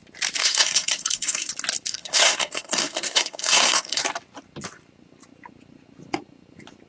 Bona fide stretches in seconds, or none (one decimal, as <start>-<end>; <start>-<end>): 0.0-0.4; 1.5-1.9; 4.0-6.9